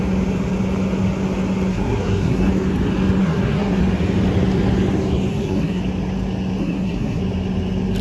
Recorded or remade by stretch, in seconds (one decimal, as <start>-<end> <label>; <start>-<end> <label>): 0.0-1.7 recorded; 1.7-2.5 remade; 2.5-3.2 recorded; 3.2-3.8 remade; 3.8-5.3 recorded; 5.3-5.8 remade; 5.8-6.6 recorded; 6.6-7.2 remade; 7.2-8.0 recorded